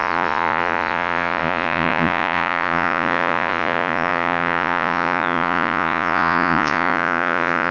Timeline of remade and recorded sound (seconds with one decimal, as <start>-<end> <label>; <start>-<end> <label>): 0.0-7.7 remade